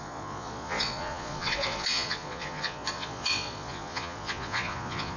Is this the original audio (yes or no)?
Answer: no